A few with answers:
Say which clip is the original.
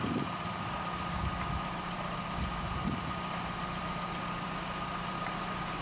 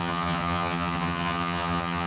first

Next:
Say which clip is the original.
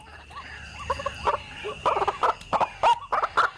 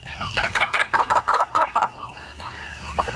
first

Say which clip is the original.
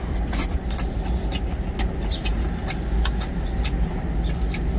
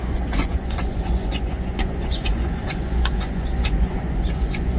first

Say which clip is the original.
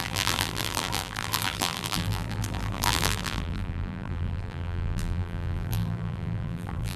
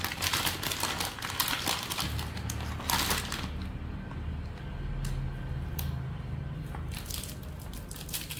second